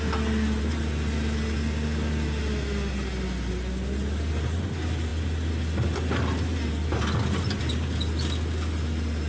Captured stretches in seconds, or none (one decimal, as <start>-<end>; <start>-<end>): 0.0-9.3